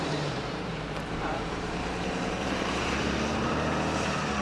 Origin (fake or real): fake